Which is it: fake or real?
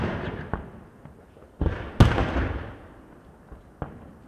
real